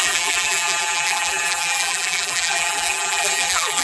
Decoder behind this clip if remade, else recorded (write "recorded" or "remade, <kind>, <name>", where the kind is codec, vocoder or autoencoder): remade, vocoder, BigVGAN v2